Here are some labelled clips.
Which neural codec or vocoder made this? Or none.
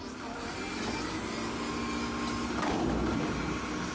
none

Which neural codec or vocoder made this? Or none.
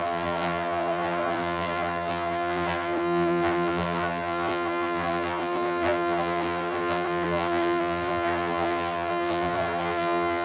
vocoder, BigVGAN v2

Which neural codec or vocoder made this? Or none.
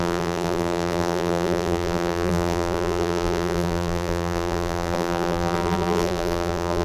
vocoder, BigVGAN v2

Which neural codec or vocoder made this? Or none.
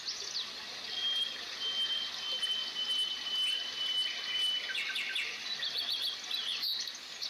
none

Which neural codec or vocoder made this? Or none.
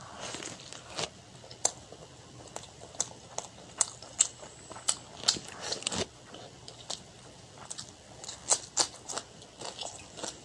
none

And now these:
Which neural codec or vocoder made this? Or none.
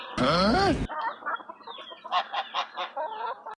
none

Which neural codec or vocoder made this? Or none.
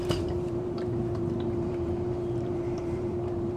vocoder, BigVGAN v2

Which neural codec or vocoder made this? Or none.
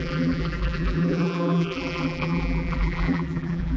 vocoder, BigVGAN v2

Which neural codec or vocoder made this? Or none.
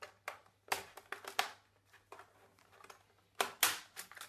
none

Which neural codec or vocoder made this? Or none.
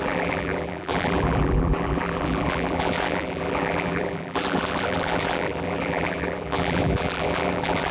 vocoder, BigVGAN v2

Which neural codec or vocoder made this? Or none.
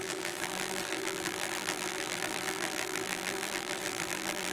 vocoder, BigVGAN v2